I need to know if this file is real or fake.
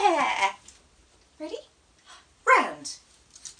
real